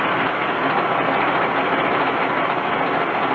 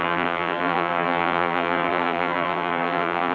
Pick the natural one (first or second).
first